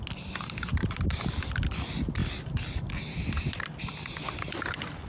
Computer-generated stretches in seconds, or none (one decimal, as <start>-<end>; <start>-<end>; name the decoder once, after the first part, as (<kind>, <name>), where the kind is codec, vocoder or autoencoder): 0.7-1.3 (vocoder, BigVGAN v2)